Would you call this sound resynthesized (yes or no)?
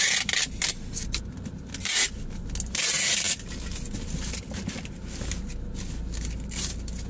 no